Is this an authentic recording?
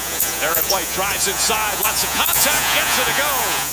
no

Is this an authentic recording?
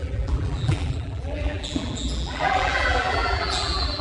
no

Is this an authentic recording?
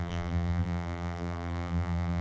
no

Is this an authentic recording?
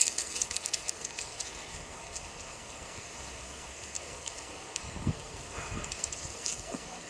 no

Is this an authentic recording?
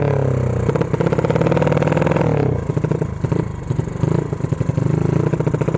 yes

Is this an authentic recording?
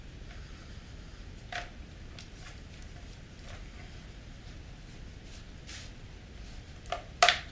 yes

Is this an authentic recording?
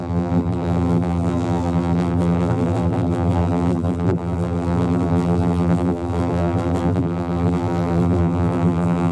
no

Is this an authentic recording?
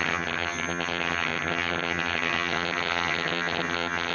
no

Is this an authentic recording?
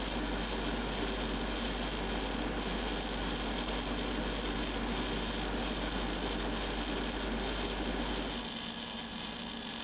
yes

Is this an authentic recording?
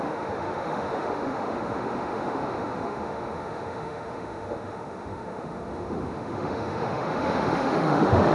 no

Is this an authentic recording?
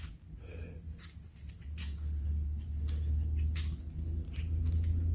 yes